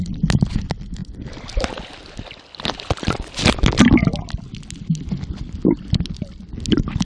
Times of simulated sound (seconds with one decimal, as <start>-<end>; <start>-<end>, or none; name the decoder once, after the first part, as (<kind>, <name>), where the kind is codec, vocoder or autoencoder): none